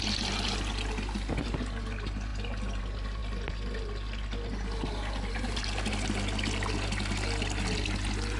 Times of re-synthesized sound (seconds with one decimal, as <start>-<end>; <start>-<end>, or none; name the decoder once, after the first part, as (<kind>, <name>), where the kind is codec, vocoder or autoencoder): none